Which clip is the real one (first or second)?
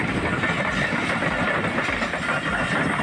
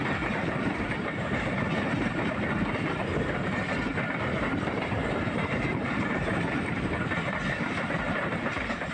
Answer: first